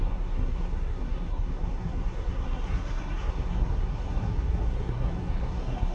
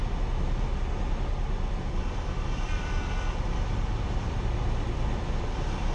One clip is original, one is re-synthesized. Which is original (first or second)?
second